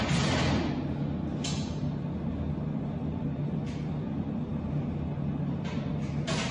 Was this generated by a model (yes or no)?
no